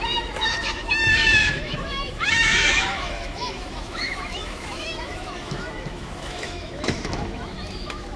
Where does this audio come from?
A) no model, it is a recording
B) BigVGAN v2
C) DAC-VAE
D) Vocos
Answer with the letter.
C